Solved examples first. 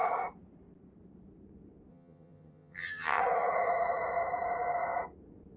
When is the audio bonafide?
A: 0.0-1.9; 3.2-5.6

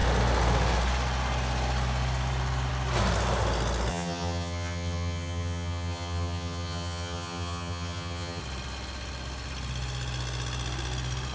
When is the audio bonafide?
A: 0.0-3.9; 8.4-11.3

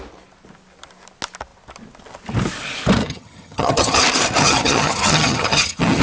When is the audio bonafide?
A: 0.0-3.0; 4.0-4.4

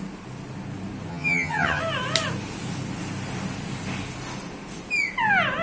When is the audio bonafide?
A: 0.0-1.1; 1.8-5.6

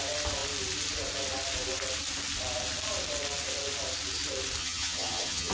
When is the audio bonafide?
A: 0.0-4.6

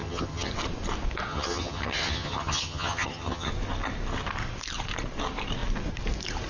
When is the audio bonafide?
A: 0.5-1.3; 3.5-6.5

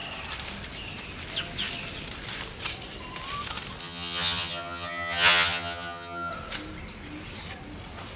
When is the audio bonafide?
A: 0.0-3.8; 6.3-8.2